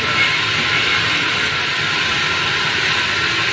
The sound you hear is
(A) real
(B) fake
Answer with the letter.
B